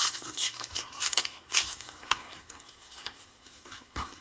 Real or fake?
fake